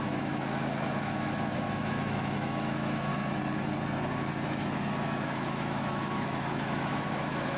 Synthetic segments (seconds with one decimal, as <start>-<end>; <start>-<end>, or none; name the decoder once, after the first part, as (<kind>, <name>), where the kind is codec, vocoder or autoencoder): 0.0-3.1 (autoencoder, DAC-VAE); 5.2-7.6